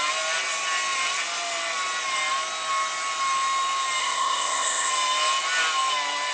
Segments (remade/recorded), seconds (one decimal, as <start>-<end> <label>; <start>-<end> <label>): 0.0-4.0 recorded; 4.0-4.9 remade; 4.9-6.3 recorded